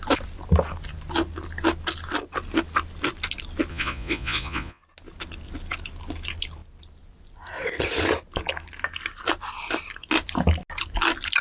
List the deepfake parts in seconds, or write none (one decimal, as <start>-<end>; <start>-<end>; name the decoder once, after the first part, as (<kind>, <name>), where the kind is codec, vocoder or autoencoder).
3.7-4.8 (vocoder, Vocos)